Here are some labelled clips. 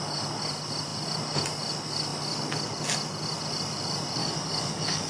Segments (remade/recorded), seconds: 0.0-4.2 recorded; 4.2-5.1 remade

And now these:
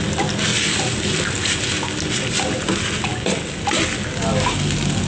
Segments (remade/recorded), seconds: 0.0-5.1 recorded

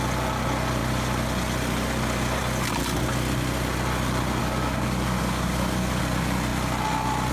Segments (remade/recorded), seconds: 0.0-4.4 recorded; 4.4-6.0 remade; 6.0-7.3 recorded

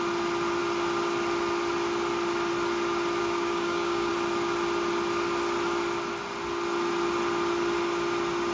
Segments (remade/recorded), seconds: 0.0-3.2 recorded; 3.2-4.1 remade; 4.1-8.5 recorded

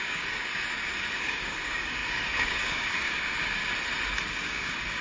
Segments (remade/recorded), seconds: 0.0-3.6 remade; 3.6-4.3 recorded; 4.3-5.0 remade

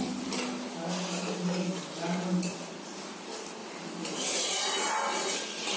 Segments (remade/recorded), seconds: 0.0-5.8 recorded

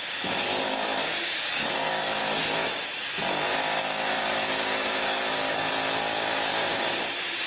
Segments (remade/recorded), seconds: 0.0-0.7 recorded; 0.7-2.2 remade; 2.2-3.8 recorded; 3.8-5.7 remade; 5.7-7.5 recorded